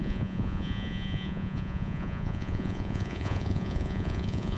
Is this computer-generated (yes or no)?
yes